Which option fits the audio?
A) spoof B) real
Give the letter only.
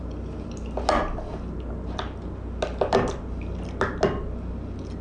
B